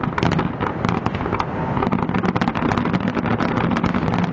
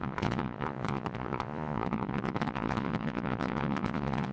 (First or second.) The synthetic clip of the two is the second